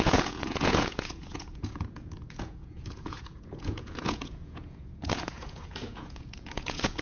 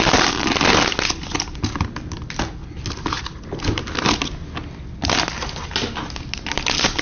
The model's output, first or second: first